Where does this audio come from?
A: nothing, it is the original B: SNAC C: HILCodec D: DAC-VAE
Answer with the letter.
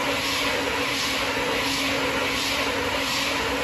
A